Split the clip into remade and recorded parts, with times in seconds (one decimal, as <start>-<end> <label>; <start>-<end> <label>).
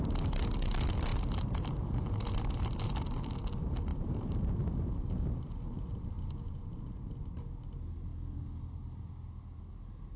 0.0-1.1 recorded; 1.1-2.4 remade; 2.4-3.9 recorded; 3.9-4.5 remade; 4.5-10.2 recorded